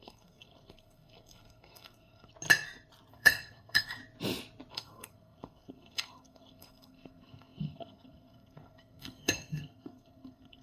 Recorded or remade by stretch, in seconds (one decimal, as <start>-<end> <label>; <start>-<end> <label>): 0.0-2.3 remade; 2.3-3.1 recorded; 3.1-4.0 remade; 4.0-4.7 recorded; 4.7-10.6 remade